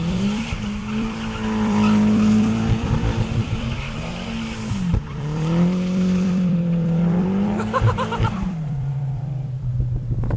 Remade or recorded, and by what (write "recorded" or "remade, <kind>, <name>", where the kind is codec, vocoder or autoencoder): remade, vocoder, BigVGAN v2